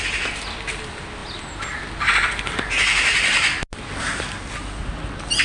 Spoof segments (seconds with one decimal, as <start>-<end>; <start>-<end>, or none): none